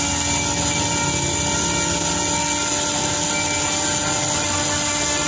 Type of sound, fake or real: real